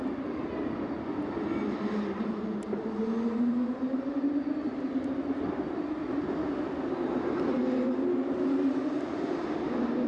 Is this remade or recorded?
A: recorded